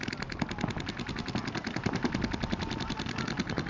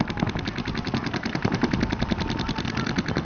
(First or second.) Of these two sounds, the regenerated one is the second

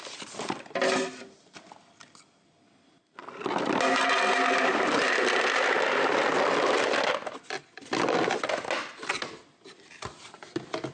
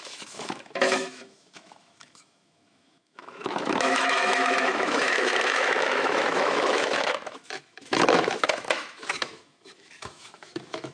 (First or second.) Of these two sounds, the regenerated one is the second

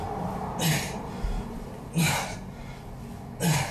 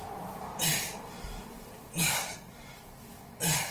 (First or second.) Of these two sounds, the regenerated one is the second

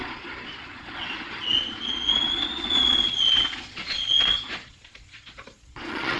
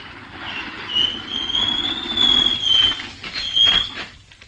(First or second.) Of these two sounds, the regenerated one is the first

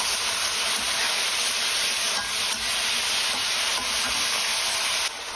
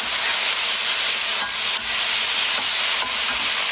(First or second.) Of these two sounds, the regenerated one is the first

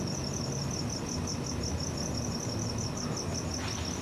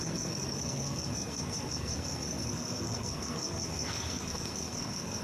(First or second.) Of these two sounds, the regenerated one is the second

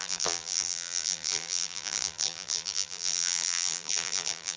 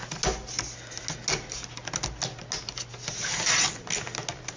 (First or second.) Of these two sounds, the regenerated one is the first